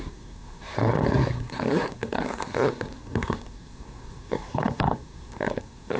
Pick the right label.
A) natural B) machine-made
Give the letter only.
B